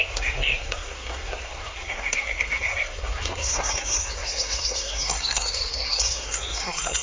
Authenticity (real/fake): fake